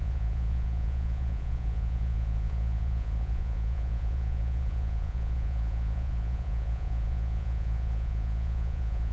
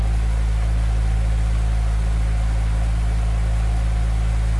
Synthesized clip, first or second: first